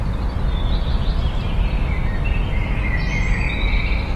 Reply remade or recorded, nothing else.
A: recorded